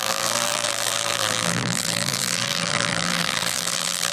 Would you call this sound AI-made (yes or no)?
yes